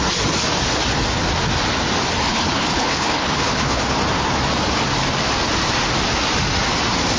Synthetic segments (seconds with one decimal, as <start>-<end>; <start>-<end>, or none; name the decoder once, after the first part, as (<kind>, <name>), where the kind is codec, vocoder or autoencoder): 2.3-3.8 (codec, HILCodec)